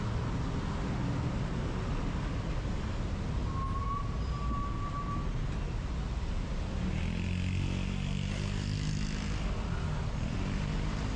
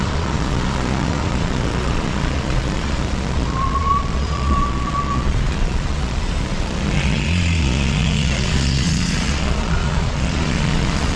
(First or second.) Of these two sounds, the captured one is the first